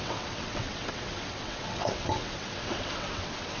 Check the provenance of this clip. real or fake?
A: fake